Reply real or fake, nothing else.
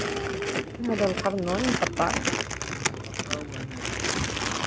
real